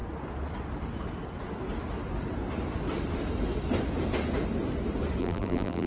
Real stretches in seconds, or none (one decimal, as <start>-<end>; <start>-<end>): 0.0-5.2